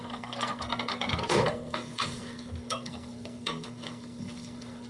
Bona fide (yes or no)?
no